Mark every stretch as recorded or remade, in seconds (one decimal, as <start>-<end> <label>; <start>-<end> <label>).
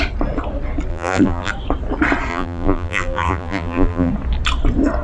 0.0-0.9 recorded; 0.9-1.5 remade; 1.5-2.3 recorded; 2.3-4.1 remade; 4.1-5.0 recorded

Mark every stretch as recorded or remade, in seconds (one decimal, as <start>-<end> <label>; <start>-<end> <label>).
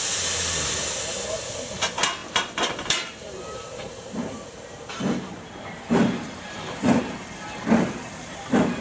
0.0-2.2 recorded; 2.2-7.0 remade; 7.0-8.8 recorded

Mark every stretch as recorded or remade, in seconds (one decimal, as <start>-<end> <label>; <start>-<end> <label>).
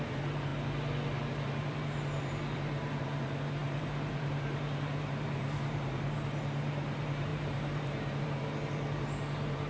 0.0-0.5 remade; 0.5-1.3 recorded; 1.3-9.7 remade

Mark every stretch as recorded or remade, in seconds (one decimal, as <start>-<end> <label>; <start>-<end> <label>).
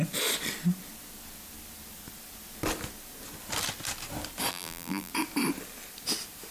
0.0-4.5 recorded; 4.5-5.1 remade; 5.1-6.5 recorded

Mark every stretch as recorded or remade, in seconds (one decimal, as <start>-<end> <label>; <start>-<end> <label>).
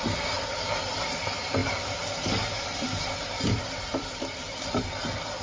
0.0-1.6 recorded; 1.6-4.8 remade; 4.8-5.4 recorded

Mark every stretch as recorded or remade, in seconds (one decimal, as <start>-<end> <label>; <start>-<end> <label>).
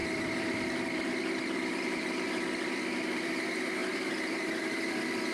0.0-5.3 remade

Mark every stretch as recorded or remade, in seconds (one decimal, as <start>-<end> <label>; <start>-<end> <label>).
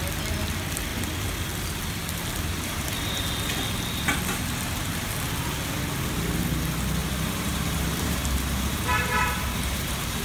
0.0-2.5 recorded; 2.5-3.2 remade; 3.2-7.0 recorded; 7.0-10.2 remade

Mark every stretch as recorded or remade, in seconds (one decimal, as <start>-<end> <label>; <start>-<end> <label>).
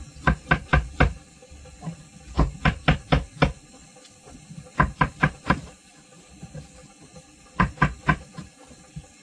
0.0-3.8 recorded; 3.8-6.7 remade; 6.7-9.2 recorded